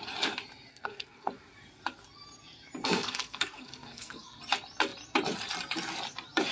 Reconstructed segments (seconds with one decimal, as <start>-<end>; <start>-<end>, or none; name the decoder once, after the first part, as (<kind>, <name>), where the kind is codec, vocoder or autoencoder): 0.7-1.3 (codec, SNAC); 2.8-4.4